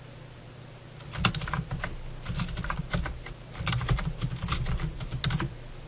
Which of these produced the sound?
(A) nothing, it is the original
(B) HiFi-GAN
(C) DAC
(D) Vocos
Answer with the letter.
A